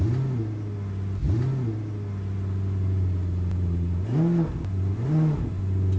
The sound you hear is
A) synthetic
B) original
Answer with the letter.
B